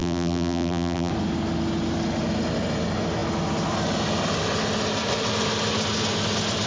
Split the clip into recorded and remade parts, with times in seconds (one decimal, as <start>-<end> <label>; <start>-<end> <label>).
0.0-1.1 remade; 1.1-6.7 recorded